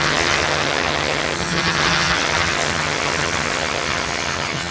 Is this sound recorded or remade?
remade